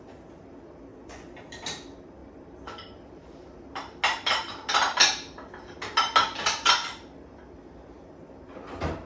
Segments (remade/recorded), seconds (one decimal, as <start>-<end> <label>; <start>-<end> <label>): 0.0-0.9 recorded; 0.9-1.4 remade; 1.4-9.1 recorded